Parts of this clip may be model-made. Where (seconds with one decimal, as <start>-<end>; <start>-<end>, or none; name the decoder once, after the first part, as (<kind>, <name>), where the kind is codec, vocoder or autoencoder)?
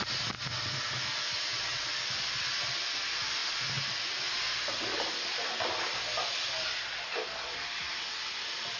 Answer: none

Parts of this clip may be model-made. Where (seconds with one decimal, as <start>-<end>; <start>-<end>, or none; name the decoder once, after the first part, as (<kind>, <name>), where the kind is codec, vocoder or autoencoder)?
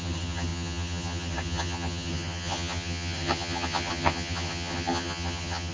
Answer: 0.0-5.7 (vocoder, HiFi-GAN)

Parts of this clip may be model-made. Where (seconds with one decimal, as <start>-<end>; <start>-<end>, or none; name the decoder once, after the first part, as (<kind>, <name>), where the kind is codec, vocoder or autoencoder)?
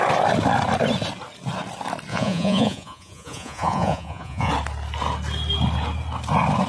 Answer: 2.1-4.5 (vocoder, Vocos)